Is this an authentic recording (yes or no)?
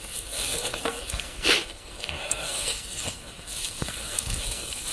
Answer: no